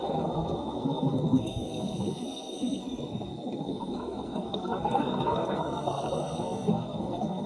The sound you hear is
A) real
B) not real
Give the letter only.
B